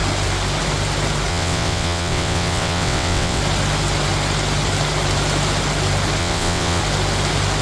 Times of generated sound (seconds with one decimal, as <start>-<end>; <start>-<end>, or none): 1.3-3.4; 6.2-6.8